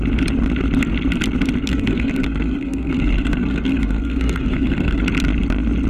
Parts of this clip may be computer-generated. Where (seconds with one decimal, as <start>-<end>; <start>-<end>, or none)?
1.7-5.0